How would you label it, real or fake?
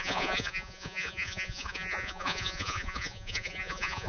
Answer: fake